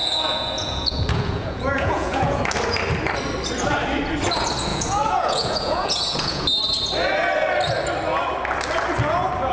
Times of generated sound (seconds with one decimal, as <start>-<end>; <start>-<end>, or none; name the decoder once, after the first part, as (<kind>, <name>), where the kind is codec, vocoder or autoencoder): 0.0-2.4 (vocoder, Vocos); 4.7-6.4